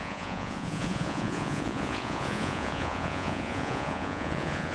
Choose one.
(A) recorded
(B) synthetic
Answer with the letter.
B